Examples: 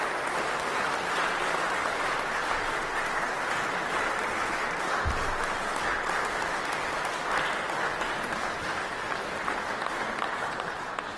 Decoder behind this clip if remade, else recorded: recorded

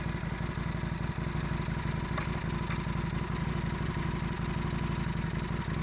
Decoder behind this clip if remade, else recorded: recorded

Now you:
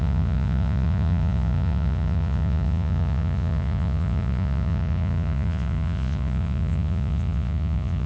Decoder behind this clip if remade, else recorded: remade, vocoder, Vocos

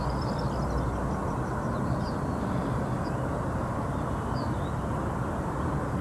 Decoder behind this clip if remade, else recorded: recorded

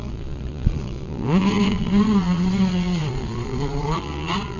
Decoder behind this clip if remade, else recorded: remade, vocoder, Vocos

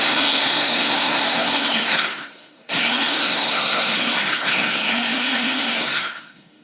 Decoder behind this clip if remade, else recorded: remade, codec, SNAC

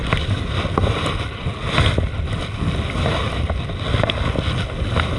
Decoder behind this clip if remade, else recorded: recorded